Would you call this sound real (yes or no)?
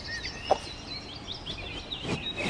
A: yes